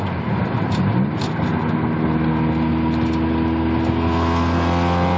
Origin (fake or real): real